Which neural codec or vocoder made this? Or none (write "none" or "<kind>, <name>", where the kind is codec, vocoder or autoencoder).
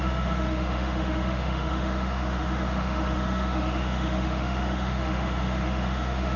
autoencoder, DAC-VAE